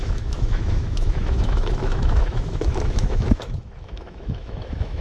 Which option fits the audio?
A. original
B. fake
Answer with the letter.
B